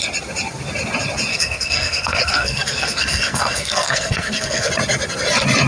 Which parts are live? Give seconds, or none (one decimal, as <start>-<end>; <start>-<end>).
0.0-1.3; 4.7-5.7